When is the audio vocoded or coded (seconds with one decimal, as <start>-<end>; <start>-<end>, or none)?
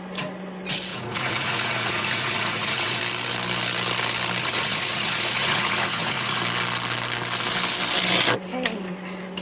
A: 0.9-3.0; 4.4-6.4